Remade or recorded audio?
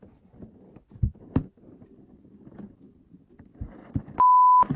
recorded